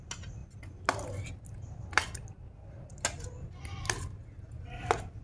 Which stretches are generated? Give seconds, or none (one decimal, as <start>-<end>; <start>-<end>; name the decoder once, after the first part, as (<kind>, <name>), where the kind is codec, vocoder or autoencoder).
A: none